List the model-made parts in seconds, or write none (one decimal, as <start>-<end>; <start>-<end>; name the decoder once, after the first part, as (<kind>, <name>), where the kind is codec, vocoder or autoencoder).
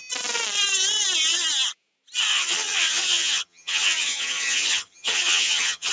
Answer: 2.3-5.9 (vocoder, HiFi-GAN)